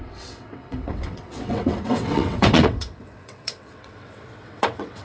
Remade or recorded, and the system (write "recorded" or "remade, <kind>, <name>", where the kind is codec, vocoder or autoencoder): remade, vocoder, WaveNeXt